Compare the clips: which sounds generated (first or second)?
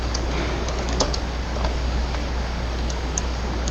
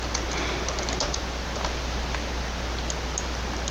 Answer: first